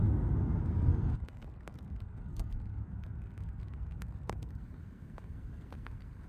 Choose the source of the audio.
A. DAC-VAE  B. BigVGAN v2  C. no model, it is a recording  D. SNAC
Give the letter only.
D